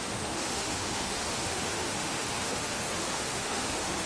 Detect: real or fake fake